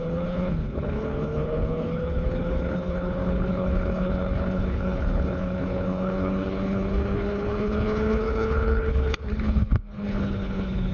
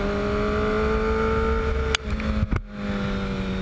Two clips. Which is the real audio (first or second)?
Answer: second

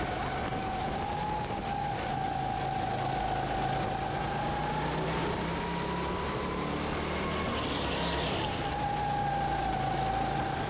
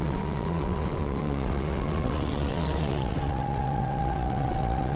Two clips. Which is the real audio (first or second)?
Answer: first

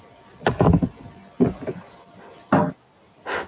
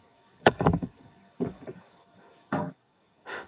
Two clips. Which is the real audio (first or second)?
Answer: first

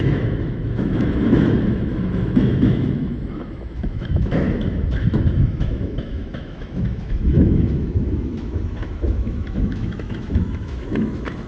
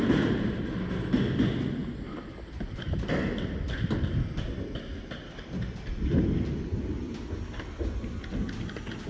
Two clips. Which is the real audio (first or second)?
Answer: second